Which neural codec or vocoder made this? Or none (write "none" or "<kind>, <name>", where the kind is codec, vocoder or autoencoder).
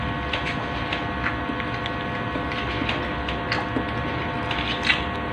none